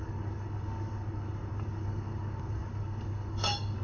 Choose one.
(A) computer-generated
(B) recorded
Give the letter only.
A